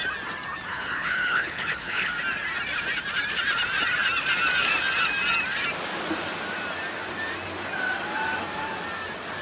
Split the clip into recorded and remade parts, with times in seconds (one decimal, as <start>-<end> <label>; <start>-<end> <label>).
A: 0.0-0.7 recorded; 0.7-2.1 remade; 2.1-9.4 recorded